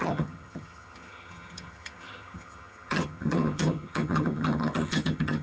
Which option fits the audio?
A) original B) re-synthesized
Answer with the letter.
B